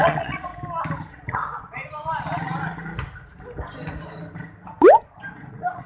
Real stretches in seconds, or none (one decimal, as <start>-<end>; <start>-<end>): 0.5-1.1; 1.8-5.3